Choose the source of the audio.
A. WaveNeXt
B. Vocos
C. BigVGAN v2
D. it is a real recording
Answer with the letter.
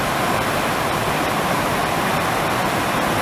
C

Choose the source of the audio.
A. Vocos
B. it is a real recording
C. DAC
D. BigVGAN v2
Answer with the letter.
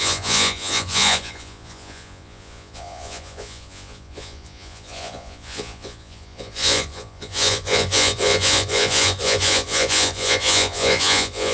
A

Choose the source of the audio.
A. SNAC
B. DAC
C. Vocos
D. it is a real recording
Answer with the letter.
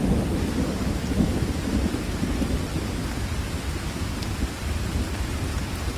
D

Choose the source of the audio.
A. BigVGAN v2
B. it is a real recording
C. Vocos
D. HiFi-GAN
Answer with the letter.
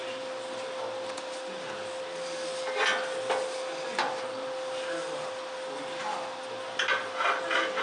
B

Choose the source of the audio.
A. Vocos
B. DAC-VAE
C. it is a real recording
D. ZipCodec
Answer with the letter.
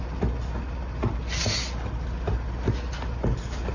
C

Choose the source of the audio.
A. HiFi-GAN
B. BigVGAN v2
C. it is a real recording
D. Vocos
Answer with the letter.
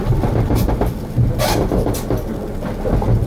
C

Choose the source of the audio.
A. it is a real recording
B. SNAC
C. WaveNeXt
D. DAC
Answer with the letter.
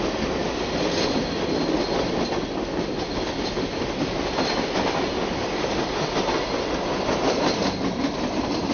A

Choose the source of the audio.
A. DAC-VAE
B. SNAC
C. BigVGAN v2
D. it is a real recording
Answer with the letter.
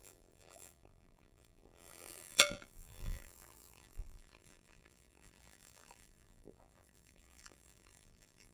C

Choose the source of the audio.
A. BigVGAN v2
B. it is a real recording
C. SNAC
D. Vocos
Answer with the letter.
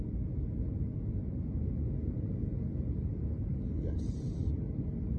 B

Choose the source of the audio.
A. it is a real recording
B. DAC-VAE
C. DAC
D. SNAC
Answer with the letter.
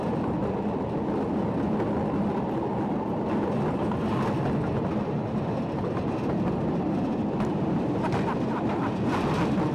A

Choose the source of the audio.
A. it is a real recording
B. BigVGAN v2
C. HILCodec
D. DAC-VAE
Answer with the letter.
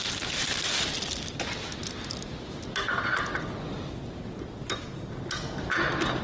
A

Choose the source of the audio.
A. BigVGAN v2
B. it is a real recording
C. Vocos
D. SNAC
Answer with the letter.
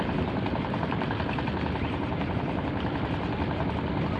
B